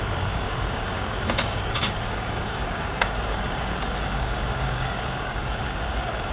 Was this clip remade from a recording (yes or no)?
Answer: yes